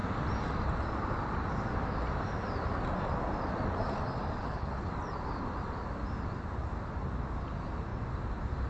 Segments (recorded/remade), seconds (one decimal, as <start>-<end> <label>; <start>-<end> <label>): 0.0-4.4 recorded; 4.4-4.9 remade; 4.9-8.7 recorded